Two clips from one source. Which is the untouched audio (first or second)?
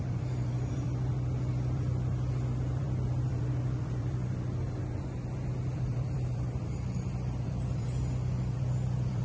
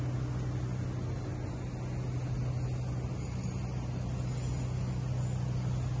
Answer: second